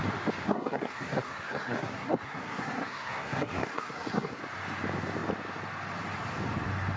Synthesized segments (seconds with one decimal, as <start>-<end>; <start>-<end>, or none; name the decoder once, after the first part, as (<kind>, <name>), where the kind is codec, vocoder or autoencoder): 0.4-4.4 (codec, SNAC)

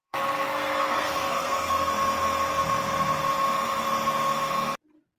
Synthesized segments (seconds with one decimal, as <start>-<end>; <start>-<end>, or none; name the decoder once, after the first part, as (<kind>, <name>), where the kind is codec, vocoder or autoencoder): 0.0-1.9 (codec, SNAC)

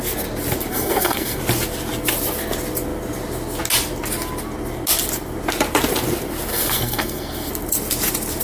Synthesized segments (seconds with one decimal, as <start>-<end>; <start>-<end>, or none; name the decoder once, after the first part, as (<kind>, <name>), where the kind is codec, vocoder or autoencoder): 0.7-1.4 (codec, SNAC); 6.5-7.5

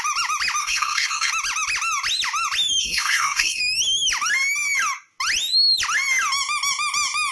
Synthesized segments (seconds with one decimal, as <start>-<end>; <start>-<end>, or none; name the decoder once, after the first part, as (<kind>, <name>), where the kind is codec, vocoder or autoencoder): 0.6-1.3 (codec, SNAC); 2.8-3.6

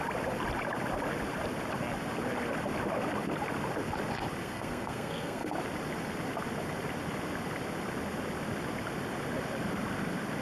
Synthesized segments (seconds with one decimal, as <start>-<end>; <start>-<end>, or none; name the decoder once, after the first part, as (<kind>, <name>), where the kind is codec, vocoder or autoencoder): 4.4-5.5 (codec, SNAC)

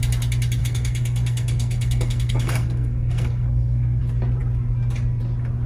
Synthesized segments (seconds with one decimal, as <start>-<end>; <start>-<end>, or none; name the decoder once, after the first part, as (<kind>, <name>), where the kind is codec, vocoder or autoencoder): 0.6-4.0 (codec, SNAC)